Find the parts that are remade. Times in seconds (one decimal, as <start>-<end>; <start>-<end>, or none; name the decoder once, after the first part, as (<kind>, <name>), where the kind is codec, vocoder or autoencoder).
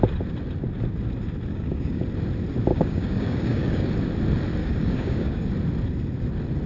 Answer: 1.5-2.0 (codec, DAC); 2.7-3.9; 4.6-5.5